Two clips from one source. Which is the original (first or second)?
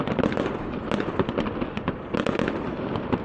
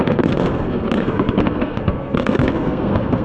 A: first